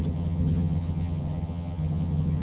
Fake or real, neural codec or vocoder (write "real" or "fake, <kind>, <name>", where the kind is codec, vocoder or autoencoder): fake, vocoder, HiFi-GAN